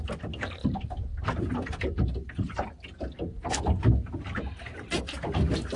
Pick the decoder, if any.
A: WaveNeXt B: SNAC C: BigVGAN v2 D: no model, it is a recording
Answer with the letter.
D